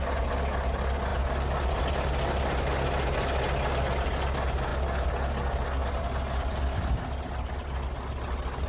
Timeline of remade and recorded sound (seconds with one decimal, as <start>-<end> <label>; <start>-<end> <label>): 0.0-8.7 recorded